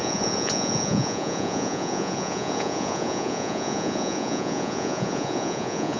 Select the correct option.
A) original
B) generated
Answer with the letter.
B